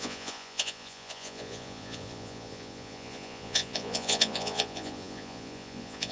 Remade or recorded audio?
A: remade